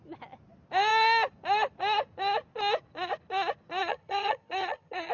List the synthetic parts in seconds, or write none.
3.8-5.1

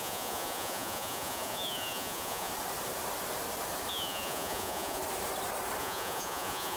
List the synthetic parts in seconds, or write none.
0.0-2.5; 3.9-5.0; 5.8-6.8

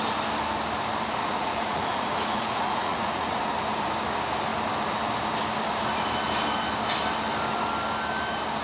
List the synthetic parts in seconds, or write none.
1.2-3.4